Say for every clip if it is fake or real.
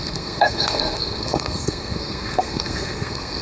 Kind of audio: fake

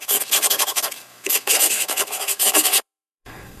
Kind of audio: fake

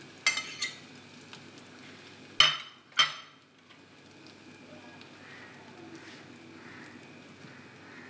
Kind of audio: real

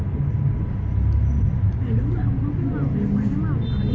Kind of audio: real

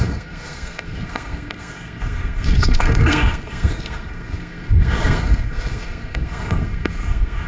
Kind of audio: fake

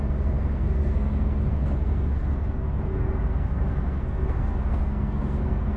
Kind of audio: fake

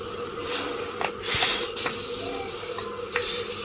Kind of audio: real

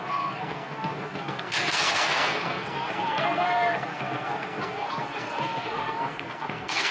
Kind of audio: fake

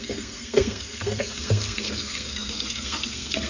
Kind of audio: fake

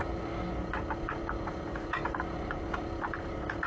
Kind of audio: real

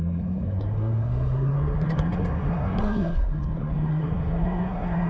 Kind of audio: fake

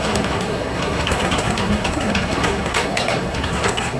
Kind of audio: fake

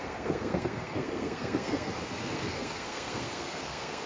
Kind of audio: fake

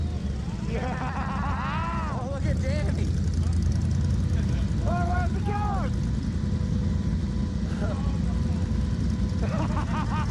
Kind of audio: real